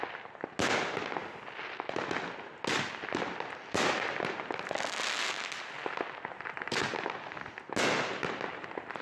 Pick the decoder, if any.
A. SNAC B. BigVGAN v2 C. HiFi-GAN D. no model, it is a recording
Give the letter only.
D